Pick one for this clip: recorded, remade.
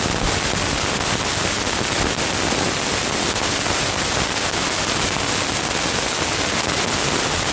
recorded